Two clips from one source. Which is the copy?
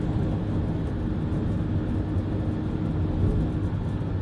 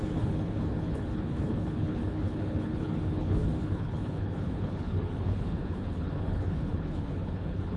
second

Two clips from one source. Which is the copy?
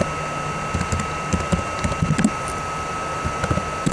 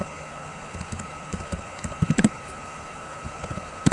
second